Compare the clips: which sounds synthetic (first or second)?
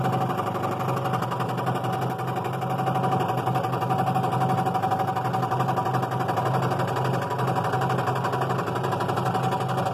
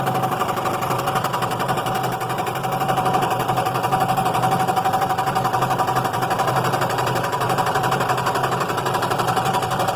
second